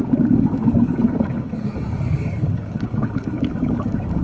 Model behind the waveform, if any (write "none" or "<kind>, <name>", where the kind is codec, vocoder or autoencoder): codec, DAC